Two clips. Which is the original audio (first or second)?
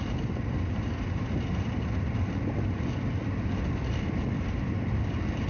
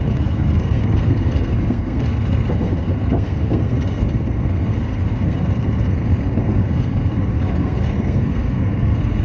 first